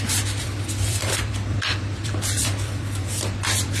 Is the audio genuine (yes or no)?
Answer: no